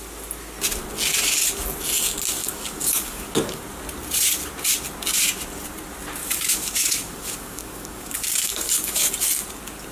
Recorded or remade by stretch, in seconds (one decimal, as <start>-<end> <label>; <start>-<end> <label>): 0.0-2.4 recorded; 2.4-3.6 remade; 3.6-6.2 recorded; 6.2-9.1 remade; 9.1-9.9 recorded